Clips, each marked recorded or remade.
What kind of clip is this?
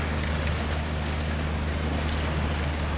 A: recorded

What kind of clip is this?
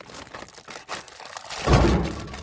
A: recorded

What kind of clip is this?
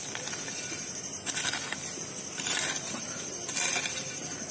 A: recorded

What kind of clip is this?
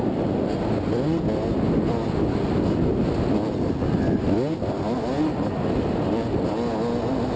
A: recorded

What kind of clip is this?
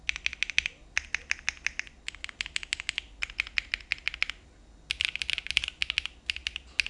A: recorded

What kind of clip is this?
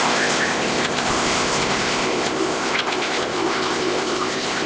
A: remade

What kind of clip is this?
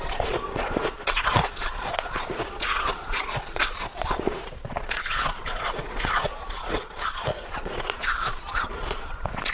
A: remade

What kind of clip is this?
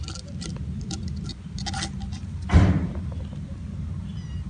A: recorded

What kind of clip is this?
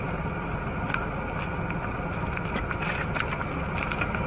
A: recorded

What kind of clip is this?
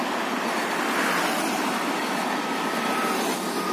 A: recorded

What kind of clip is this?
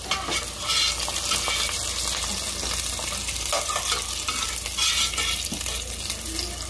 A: recorded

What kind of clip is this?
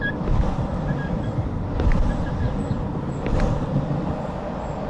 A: recorded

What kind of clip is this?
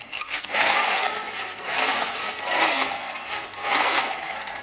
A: remade